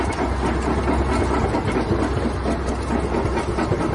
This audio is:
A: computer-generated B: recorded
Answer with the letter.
B